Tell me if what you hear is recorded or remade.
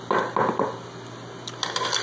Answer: recorded